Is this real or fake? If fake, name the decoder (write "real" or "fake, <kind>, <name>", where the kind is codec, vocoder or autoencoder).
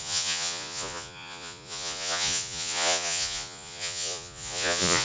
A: fake, vocoder, Vocos